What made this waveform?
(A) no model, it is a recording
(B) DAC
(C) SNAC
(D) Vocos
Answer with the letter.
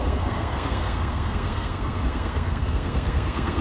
C